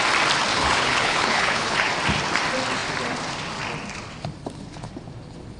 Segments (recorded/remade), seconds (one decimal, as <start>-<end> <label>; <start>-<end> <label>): 0.0-0.5 recorded; 0.5-1.9 remade; 1.9-5.6 recorded